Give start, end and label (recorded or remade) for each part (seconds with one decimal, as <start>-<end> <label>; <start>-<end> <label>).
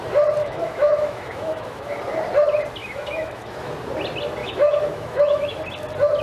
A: 0.0-0.4 recorded; 0.4-2.0 remade; 2.0-2.8 recorded; 2.8-3.7 remade; 3.7-4.4 recorded; 4.4-5.6 remade; 5.6-6.2 recorded